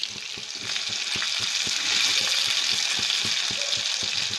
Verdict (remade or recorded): recorded